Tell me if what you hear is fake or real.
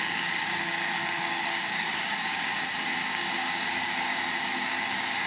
fake